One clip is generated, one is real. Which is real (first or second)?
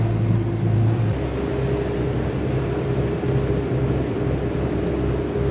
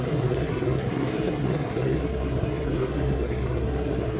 first